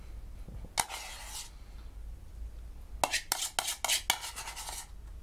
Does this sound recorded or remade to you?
recorded